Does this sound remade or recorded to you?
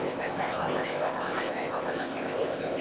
remade